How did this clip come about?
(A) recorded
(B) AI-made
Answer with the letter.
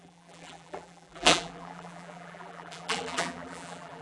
B